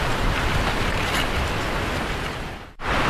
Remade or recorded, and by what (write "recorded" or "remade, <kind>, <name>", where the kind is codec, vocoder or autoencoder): recorded